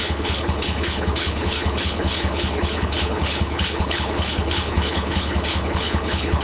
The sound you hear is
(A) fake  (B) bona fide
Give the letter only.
A